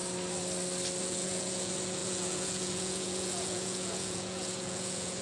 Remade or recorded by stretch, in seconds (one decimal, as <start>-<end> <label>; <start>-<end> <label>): 0.0-1.0 recorded; 1.0-5.2 remade